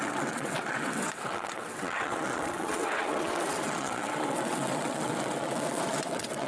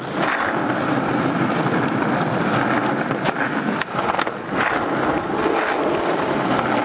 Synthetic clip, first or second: first